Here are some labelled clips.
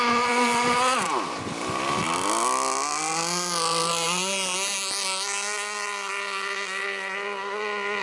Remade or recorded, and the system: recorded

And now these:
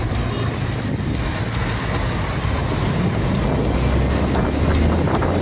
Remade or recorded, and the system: recorded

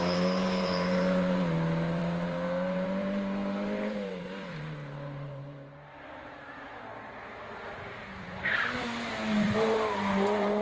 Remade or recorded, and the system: remade, vocoder, BigVGAN v2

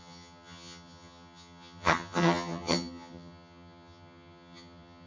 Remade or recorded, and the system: remade, vocoder, HiFi-GAN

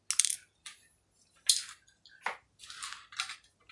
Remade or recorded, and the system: recorded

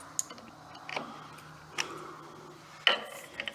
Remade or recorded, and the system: recorded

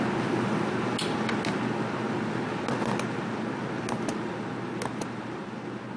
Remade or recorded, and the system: recorded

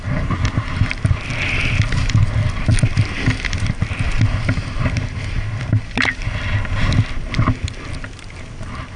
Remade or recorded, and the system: recorded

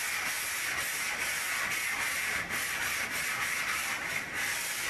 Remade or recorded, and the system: recorded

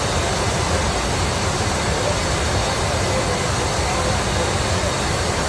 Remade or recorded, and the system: recorded